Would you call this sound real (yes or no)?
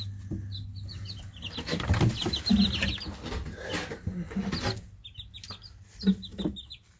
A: yes